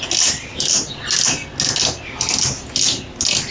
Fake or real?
real